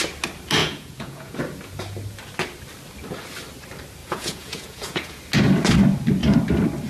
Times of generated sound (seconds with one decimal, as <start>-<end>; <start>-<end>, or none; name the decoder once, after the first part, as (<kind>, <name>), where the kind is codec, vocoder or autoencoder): 0.6-1.4 (vocoder, Vocos); 4.0-5.2